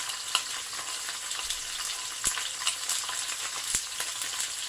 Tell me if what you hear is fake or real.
real